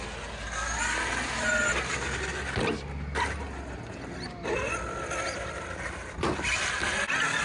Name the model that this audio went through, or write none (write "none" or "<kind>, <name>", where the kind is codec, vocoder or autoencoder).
none